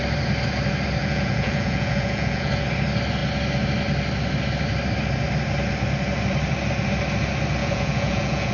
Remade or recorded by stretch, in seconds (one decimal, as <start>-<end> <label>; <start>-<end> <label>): 0.0-1.0 recorded; 1.0-2.5 remade; 2.5-7.6 recorded; 7.6-8.5 remade